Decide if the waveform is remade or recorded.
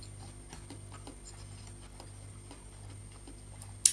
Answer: recorded